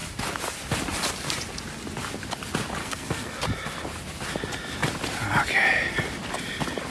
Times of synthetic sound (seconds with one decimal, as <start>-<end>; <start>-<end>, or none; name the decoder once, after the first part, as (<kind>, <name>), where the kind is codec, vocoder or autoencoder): 2.8-3.4 (codec, SNAC)